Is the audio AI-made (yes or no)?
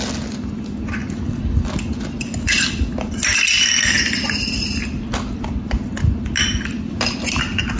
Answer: no